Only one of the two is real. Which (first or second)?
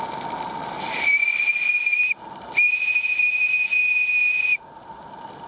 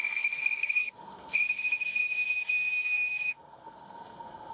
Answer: first